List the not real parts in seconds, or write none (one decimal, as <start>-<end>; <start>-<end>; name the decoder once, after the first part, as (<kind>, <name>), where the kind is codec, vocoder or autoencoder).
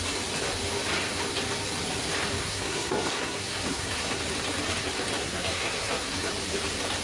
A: 2.4-4.2 (codec, SNAC); 5.2-6.3